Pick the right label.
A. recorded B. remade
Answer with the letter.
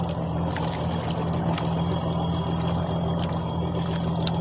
A